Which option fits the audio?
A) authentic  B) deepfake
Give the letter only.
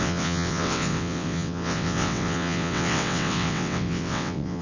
B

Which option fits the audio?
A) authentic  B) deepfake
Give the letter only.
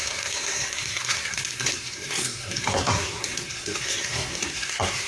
B